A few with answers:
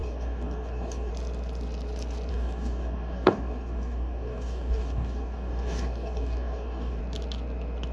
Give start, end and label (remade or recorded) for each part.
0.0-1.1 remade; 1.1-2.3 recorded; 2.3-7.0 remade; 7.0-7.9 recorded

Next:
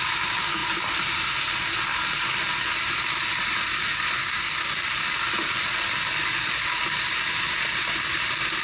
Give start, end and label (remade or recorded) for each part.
0.0-4.2 recorded; 4.2-4.9 remade; 4.9-8.6 recorded

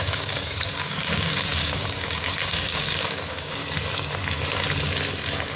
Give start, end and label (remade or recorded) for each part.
0.0-3.6 remade; 3.6-5.6 recorded

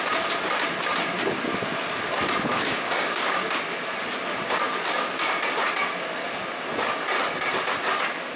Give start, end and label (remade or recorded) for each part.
0.0-2.5 recorded; 2.5-3.6 remade; 3.6-8.4 recorded

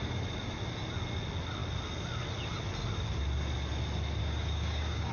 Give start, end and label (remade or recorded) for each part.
0.0-4.2 recorded; 4.2-5.1 remade

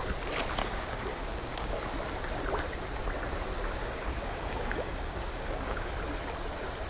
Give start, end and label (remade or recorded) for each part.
0.0-0.6 recorded; 0.6-1.7 remade; 1.7-3.5 recorded; 3.5-5.9 remade; 5.9-6.9 recorded

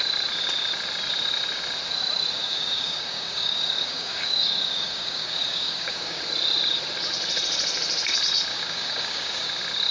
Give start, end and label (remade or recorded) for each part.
0.0-2.4 recorded; 2.4-6.2 remade; 6.2-8.5 recorded; 8.5-9.5 remade; 9.5-9.9 recorded

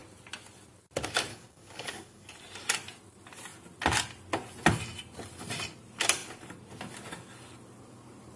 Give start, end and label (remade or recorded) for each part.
0.0-1.3 recorded; 1.3-2.3 remade; 2.3-8.4 recorded